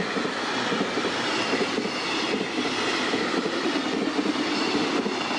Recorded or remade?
recorded